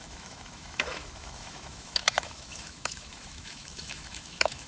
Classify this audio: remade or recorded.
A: remade